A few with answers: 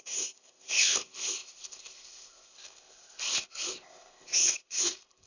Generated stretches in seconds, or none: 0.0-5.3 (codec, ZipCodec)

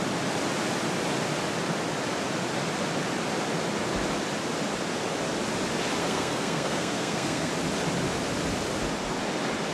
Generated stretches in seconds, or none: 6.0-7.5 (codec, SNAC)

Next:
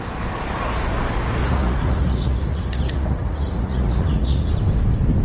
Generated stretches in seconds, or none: 1.4-4.5 (vocoder, Vocos)